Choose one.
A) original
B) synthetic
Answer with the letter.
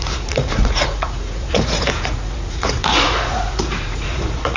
B